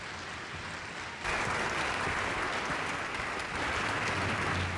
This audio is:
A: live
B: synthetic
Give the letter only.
A